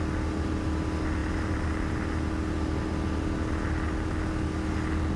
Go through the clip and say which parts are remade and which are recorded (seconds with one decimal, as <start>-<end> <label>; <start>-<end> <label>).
0.0-5.2 recorded

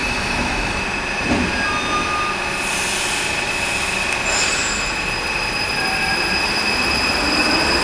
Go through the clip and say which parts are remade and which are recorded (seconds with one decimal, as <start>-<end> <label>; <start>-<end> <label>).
0.0-0.8 remade; 0.8-7.8 recorded

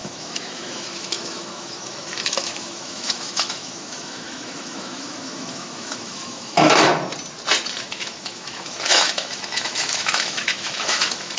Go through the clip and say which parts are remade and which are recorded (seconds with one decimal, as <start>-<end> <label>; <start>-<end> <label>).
0.0-6.9 remade; 6.9-7.8 recorded; 7.8-11.4 remade

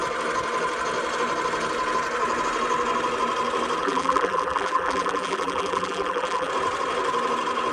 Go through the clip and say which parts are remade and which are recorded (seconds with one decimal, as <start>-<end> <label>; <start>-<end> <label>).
0.0-3.8 recorded; 3.8-6.5 remade; 6.5-7.7 recorded

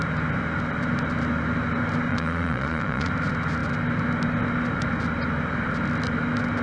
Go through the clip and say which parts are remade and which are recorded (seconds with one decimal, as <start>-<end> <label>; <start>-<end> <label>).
0.0-2.1 recorded; 2.1-3.1 remade; 3.1-6.6 recorded

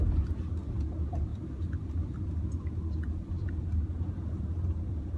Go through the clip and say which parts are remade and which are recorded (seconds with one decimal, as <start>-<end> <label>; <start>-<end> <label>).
0.0-5.2 recorded

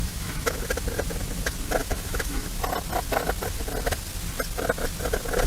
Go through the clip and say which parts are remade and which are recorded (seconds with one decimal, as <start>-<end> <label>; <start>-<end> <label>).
0.0-0.6 remade; 0.6-1.8 recorded; 1.8-2.5 remade; 2.5-5.5 recorded

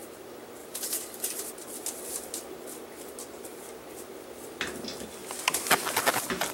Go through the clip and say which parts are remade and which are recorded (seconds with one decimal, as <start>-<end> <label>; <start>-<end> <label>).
0.0-0.6 recorded; 0.6-1.5 remade; 1.5-6.5 recorded